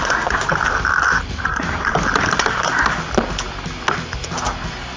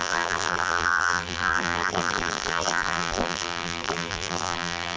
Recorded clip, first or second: first